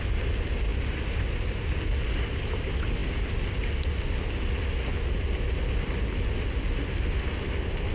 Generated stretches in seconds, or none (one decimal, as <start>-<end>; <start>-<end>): none